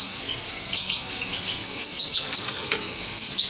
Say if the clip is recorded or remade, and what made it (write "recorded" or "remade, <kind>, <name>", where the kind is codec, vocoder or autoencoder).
remade, codec, SNAC